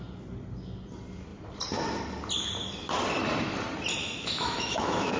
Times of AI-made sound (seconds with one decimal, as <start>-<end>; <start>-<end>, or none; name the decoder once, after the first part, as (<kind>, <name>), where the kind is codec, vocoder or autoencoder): 4.0-5.2 (autoencoder, DAC-VAE)